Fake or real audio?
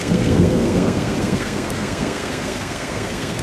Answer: fake